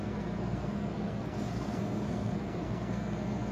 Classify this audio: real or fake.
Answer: fake